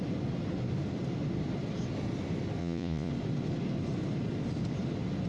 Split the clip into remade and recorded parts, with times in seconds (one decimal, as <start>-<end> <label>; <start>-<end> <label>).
0.0-2.6 recorded; 2.6-3.1 remade; 3.1-5.3 recorded

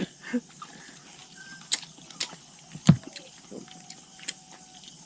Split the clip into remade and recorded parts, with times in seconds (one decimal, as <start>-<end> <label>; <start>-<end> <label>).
0.0-5.1 recorded

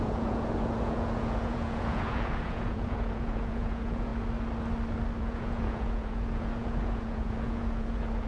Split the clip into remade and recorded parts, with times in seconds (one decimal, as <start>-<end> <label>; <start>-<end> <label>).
0.0-4.1 remade; 4.1-5.2 recorded; 5.2-8.3 remade

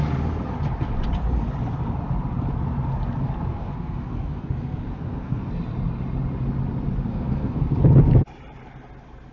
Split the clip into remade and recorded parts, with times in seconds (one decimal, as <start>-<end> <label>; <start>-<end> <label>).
0.0-3.5 recorded; 3.5-5.5 remade; 5.5-7.1 recorded; 7.1-7.7 remade; 7.7-9.3 recorded

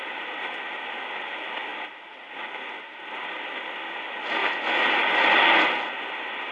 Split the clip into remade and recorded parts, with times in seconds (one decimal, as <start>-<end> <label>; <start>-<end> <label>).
0.0-6.5 recorded

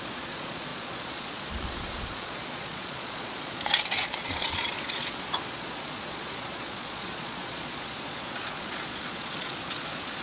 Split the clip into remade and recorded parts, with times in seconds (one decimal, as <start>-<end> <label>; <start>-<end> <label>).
0.0-10.2 remade